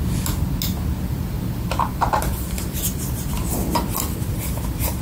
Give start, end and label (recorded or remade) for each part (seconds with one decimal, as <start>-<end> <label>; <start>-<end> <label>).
0.0-1.1 recorded; 1.1-3.9 remade; 3.9-5.0 recorded